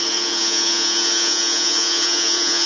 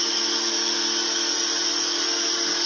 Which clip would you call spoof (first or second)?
first